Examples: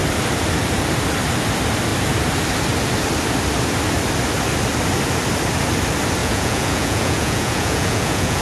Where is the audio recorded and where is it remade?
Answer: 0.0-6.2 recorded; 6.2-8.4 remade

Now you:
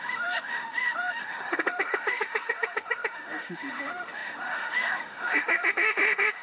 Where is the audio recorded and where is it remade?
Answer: 0.0-6.4 remade

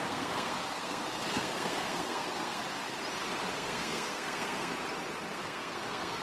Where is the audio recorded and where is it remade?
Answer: 0.0-2.6 remade; 2.6-3.5 recorded; 3.5-4.7 remade; 4.7-5.3 recorded; 5.3-6.2 remade